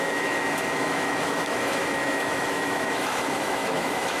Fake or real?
fake